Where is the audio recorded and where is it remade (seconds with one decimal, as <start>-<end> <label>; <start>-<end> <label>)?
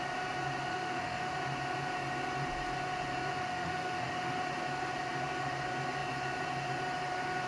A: 0.0-0.7 recorded; 0.7-1.3 remade; 1.3-3.3 recorded; 3.3-4.4 remade; 4.4-7.5 recorded